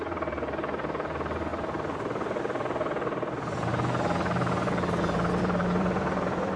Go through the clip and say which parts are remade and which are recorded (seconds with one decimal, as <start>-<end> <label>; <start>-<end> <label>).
0.0-3.7 remade; 3.7-5.3 recorded; 5.3-6.6 remade